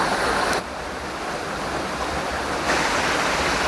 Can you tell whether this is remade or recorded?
recorded